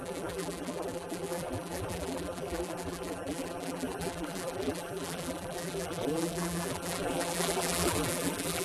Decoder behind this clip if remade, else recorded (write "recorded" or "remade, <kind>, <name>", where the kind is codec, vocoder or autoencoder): remade, vocoder, BigVGAN v2